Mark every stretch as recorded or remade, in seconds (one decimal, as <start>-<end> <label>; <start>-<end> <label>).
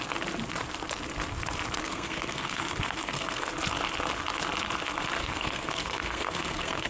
0.0-1.8 recorded; 1.8-3.5 remade; 3.5-5.2 recorded; 5.2-6.9 remade